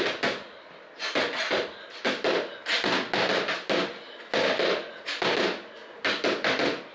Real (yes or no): yes